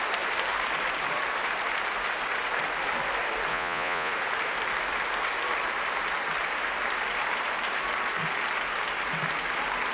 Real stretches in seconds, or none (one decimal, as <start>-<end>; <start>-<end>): 0.0-3.5; 4.1-9.9